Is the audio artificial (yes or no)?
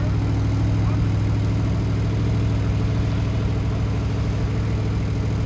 no